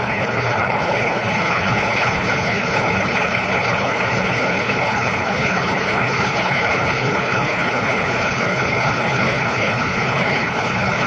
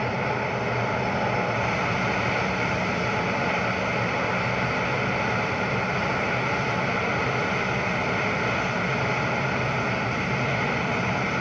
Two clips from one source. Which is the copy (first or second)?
first